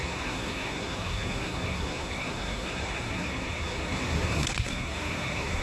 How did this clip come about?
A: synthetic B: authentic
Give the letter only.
A